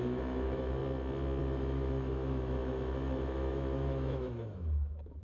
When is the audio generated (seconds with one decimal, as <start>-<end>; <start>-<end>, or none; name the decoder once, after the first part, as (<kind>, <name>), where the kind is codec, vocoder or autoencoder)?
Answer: 0.0-0.8 (autoencoder, DAC-VAE); 1.4-5.2

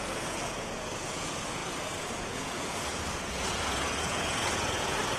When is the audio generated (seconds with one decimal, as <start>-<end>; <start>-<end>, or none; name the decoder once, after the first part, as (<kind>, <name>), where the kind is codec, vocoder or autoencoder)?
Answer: 0.0-5.2 (vocoder, Vocos)

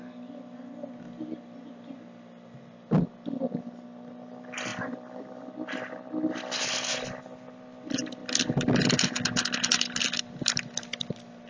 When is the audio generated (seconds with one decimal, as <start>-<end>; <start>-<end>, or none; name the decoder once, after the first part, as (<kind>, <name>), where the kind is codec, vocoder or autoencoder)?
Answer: 4.7-5.4 (vocoder, BigVGAN v2)

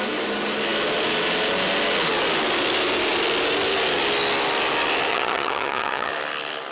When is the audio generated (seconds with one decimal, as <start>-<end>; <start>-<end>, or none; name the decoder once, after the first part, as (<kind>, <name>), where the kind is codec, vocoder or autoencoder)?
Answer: 5.1-6.1 (vocoder, HiFi-GAN)

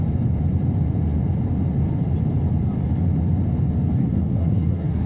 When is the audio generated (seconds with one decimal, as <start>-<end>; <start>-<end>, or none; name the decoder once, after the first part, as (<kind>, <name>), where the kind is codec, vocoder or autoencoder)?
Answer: 4.0-5.1 (codec, SNAC)

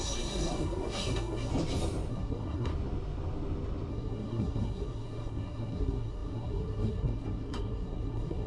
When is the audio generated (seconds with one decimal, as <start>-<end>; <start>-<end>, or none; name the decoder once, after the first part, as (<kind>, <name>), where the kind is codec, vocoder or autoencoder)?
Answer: 0.0-1.5 (codec, SNAC); 2.1-2.7; 3.9-8.5